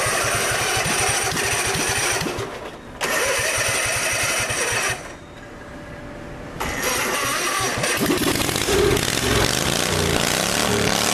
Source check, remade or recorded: recorded